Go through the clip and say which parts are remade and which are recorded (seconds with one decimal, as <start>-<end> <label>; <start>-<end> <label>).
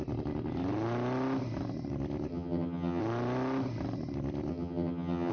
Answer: 0.0-2.3 recorded; 2.3-3.0 remade; 3.0-4.5 recorded; 4.5-5.3 remade